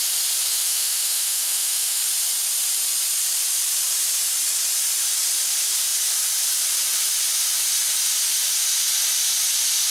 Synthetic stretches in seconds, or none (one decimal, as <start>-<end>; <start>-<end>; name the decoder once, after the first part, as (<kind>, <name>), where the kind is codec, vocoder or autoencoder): 0.5-2.0 (autoencoder, DAC-VAE)